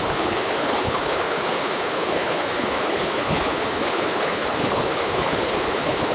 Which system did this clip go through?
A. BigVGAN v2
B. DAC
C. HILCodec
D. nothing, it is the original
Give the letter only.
C